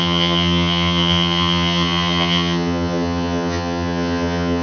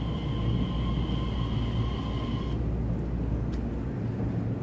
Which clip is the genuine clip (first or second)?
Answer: second